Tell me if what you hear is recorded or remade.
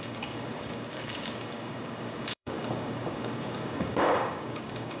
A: remade